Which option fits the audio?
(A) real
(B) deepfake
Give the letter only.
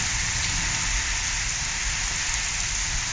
A